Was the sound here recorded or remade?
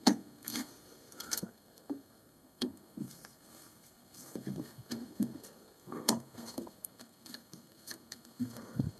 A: remade